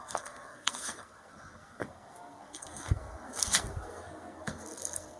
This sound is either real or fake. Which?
fake